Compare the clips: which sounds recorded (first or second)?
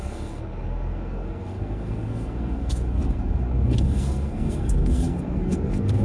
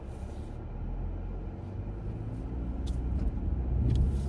second